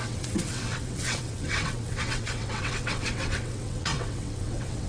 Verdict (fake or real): fake